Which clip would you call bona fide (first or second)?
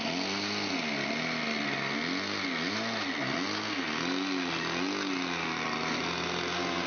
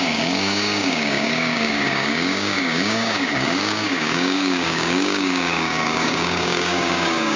first